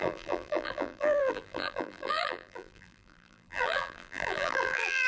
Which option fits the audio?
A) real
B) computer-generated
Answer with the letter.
B